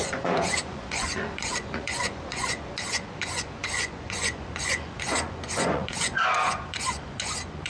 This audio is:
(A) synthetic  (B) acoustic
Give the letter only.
A